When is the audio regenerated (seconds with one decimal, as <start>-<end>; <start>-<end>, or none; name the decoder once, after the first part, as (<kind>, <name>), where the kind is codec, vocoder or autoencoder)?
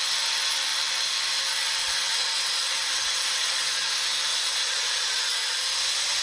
1.8-3.9 (vocoder, Vocos); 4.3-6.2